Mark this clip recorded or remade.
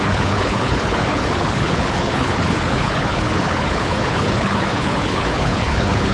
remade